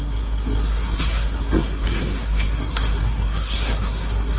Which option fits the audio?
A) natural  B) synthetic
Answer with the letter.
B